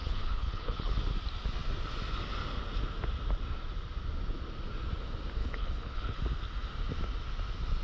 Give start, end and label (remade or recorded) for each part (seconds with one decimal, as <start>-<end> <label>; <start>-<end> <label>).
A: 0.0-1.0 remade; 1.0-5.4 recorded; 5.4-6.2 remade; 6.2-7.8 recorded